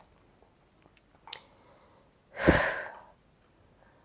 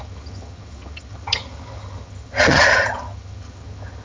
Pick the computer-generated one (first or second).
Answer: second